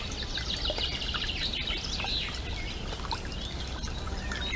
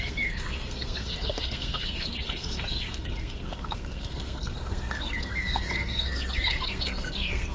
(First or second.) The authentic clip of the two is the first